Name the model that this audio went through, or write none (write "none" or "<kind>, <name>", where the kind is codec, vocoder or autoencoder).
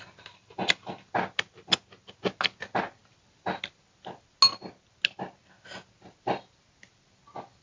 none